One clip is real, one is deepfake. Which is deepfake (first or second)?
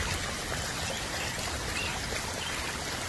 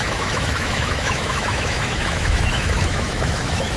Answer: second